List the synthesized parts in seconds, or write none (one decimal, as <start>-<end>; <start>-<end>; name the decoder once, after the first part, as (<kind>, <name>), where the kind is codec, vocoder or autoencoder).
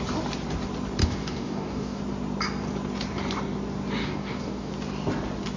1.0-2.0 (codec, DAC); 4.0-4.7